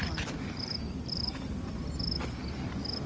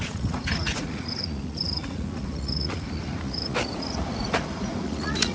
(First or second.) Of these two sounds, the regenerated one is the second